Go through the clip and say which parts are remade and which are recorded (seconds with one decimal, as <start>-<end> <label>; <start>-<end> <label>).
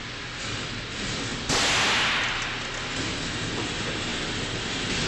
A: 0.0-5.1 recorded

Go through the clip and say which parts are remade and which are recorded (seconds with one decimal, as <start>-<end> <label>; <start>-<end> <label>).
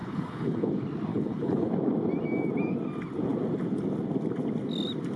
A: 0.0-0.7 remade; 0.7-1.1 recorded; 1.1-1.7 remade; 1.7-5.2 recorded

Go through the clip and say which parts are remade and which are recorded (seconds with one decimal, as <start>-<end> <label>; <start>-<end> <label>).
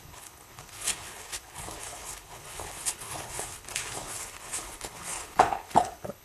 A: 0.0-6.2 remade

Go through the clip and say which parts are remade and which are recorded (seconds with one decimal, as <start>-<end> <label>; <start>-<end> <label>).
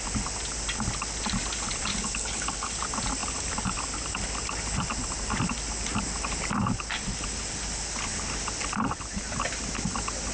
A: 0.0-2.0 recorded; 2.0-2.7 remade; 2.7-10.3 recorded